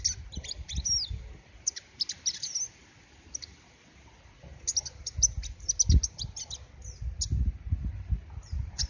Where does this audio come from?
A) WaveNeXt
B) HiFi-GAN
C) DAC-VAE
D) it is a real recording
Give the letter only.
D